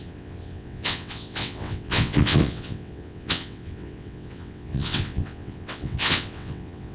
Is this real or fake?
fake